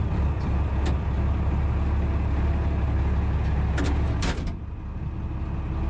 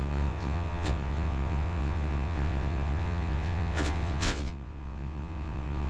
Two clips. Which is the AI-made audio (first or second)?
second